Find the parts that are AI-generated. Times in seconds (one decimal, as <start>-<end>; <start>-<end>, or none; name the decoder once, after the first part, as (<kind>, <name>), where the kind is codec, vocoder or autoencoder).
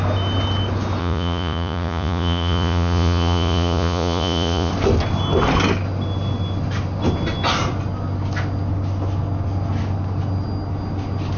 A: 1.0-4.7 (vocoder, Vocos)